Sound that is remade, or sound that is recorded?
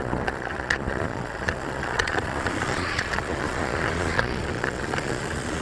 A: remade